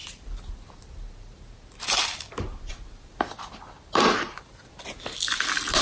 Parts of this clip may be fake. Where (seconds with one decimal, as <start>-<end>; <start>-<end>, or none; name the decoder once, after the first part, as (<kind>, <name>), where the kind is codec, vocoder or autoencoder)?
none